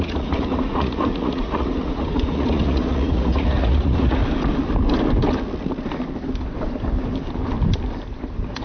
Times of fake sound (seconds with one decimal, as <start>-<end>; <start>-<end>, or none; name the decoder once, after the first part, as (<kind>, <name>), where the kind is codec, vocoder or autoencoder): 0.0-4.2 (vocoder, Vocos)